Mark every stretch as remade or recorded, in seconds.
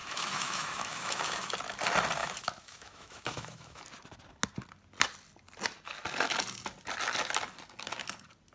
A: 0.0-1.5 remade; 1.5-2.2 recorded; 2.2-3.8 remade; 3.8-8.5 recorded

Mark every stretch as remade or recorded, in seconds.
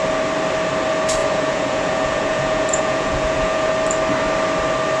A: 0.0-1.2 recorded; 1.2-3.7 remade; 3.7-5.0 recorded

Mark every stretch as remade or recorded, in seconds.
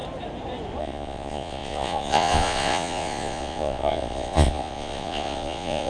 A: 0.0-0.8 recorded; 0.8-5.9 remade